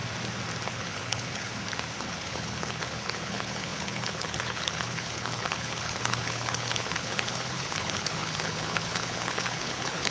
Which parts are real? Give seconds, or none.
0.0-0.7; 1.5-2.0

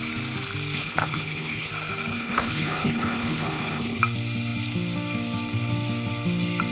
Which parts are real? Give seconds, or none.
0.0-0.8; 1.7-2.1; 4.0-6.7

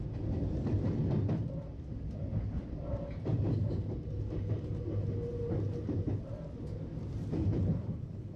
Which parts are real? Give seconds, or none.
0.0-7.4

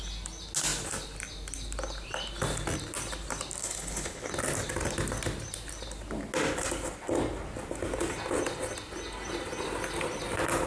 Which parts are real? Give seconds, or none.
0.0-3.6; 4.3-10.7

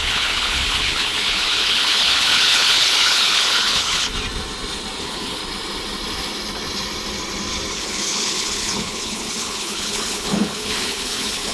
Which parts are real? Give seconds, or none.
4.1-5.0; 5.4-7.7

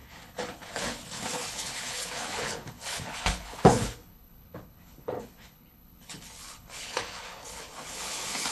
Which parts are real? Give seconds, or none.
none

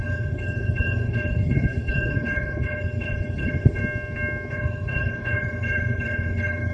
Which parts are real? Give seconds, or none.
3.8-4.5

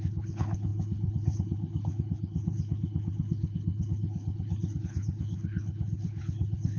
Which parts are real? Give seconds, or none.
none